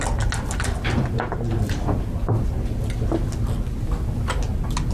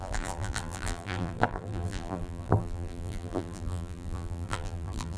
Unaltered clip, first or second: first